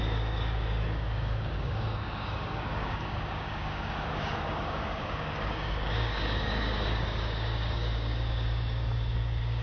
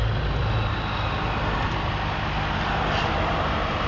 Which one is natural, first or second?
second